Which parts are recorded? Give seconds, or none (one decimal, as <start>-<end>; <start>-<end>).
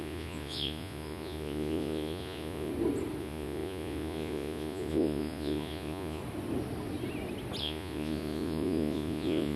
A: 2.7-3.2; 6.2-7.6